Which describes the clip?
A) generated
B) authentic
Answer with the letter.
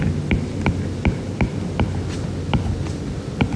B